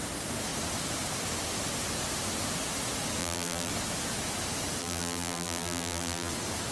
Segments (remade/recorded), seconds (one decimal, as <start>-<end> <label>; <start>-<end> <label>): 0.0-3.2 recorded; 3.2-3.7 remade; 3.7-4.8 recorded; 4.8-6.3 remade; 6.3-6.7 recorded

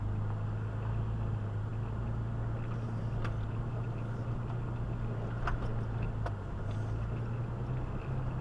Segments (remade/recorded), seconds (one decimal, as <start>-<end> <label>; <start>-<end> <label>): 0.0-8.4 recorded